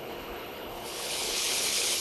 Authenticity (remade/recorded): remade